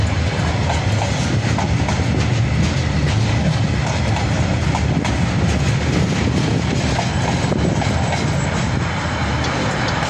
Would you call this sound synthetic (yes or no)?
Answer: no